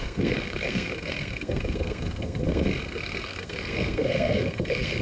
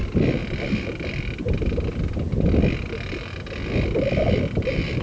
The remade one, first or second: first